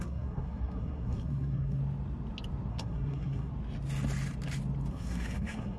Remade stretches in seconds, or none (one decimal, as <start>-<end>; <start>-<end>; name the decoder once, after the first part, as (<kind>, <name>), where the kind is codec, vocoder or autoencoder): 0.0-1.8 (codec, SNAC); 2.7-3.5; 4.9-5.8